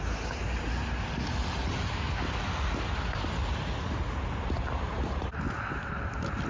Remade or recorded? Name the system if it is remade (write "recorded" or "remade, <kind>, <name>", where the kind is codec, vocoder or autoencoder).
recorded